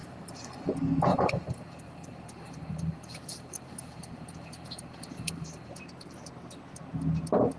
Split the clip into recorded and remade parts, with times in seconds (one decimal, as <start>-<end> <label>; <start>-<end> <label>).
0.0-0.7 remade; 0.7-1.1 recorded; 1.1-5.7 remade; 5.7-7.6 recorded